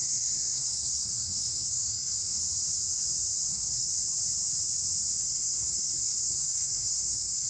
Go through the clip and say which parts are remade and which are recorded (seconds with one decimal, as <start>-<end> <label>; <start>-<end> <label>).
0.0-2.4 remade; 2.4-3.5 recorded; 3.5-3.9 remade; 3.9-5.2 recorded; 5.2-7.5 remade